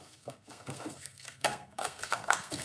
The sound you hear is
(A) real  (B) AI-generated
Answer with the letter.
B